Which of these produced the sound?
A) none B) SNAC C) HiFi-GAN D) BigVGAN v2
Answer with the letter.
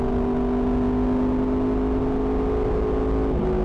A